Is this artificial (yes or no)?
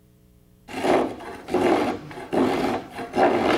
yes